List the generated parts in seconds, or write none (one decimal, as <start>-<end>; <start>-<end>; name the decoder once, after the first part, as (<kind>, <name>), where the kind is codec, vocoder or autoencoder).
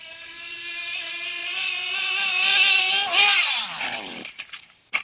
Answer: 0.0-5.0 (vocoder, BigVGAN v2)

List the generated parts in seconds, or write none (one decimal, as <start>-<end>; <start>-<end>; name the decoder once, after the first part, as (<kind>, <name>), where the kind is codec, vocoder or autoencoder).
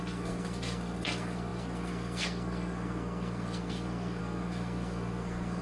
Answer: 0.0-5.6 (codec, SNAC)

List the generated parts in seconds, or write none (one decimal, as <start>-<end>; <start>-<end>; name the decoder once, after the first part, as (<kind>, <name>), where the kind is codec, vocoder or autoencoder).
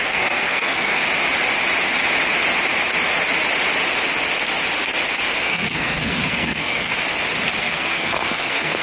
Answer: 0.0-1.0 (codec, SNAC); 5.4-6.9; 7.6-8.8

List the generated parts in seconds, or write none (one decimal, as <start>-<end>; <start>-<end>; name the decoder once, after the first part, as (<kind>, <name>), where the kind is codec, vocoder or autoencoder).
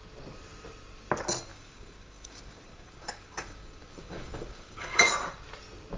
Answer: 1.5-5.1 (codec, DAC)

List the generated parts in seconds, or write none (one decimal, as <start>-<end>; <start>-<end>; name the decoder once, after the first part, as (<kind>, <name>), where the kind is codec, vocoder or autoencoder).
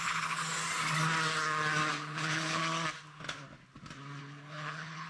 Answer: 0.0-0.4 (codec, HILCodec); 1.9-2.6; 4.2-5.1